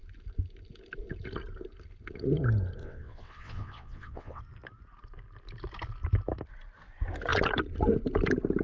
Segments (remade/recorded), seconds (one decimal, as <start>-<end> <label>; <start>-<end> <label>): 0.0-2.8 recorded; 2.8-4.4 remade; 4.4-8.6 recorded